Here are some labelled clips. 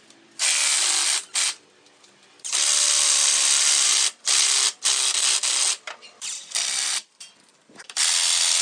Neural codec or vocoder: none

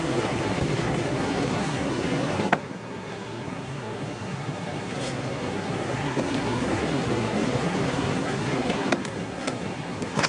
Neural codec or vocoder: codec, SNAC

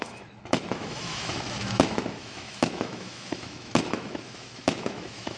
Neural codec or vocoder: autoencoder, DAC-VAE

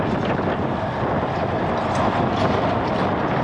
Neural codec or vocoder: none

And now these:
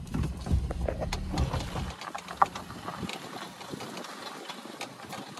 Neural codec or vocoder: none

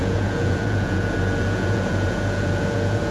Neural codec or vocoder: vocoder, Vocos